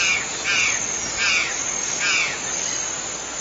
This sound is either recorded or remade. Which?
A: recorded